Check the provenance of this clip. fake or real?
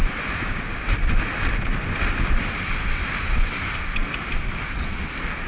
real